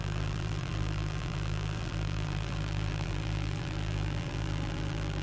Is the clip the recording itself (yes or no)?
no